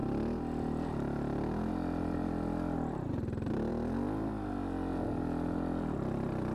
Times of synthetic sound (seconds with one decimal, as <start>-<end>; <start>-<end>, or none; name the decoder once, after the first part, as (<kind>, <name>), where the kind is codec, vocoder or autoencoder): none